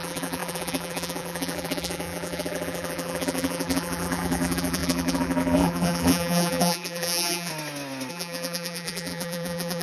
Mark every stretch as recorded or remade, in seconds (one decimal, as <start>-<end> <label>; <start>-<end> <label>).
0.0-7.5 remade; 7.5-8.1 recorded; 8.1-9.8 remade